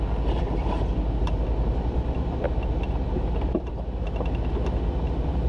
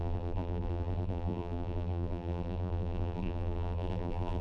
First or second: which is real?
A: first